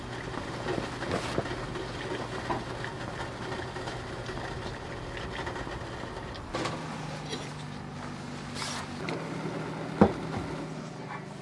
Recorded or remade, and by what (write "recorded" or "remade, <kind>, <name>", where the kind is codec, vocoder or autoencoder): recorded